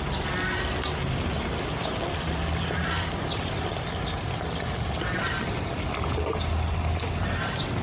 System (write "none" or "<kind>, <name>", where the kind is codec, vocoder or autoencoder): none